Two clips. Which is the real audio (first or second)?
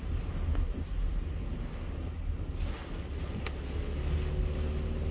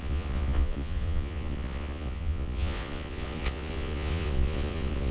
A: first